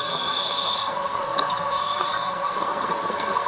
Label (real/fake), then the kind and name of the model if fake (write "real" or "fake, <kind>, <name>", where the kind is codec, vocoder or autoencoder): fake, codec, SNAC